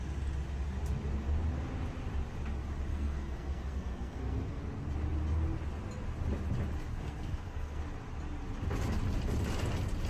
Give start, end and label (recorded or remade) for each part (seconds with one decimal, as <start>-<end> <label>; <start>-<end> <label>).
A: 0.0-2.9 recorded; 2.9-4.6 remade; 4.6-6.9 recorded; 6.9-7.8 remade; 7.8-10.1 recorded